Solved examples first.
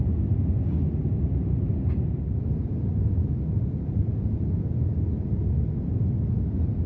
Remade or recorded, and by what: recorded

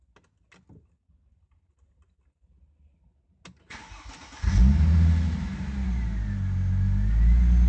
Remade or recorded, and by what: recorded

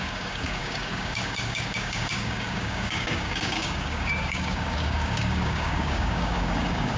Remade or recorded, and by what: remade, codec, DAC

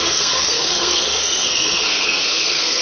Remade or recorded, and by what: remade, codec, SNAC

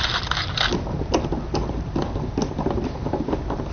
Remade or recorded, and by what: recorded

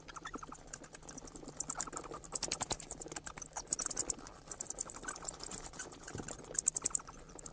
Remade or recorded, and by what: remade, vocoder, BigVGAN v2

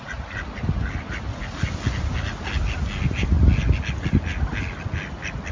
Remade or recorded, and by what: recorded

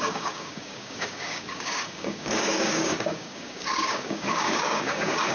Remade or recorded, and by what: remade, codec, DAC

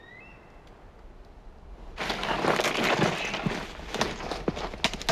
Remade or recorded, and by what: recorded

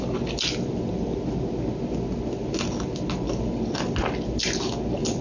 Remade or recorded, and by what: recorded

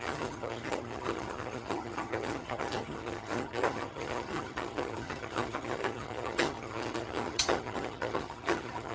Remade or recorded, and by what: remade, vocoder, HiFi-GAN